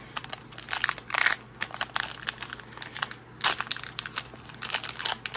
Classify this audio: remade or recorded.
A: recorded